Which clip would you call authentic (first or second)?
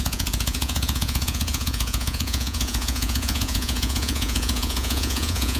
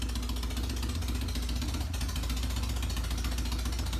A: second